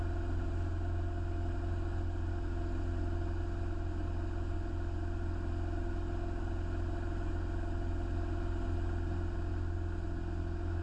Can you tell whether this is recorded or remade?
recorded